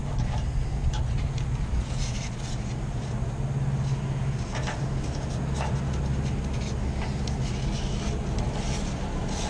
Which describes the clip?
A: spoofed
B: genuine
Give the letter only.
B